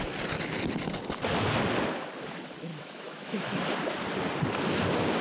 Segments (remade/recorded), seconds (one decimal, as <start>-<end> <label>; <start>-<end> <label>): 0.0-2.7 recorded; 2.7-3.6 remade; 3.6-5.2 recorded